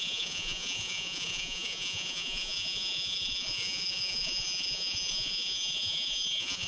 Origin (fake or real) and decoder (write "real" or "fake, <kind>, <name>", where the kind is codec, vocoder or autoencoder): fake, vocoder, Vocos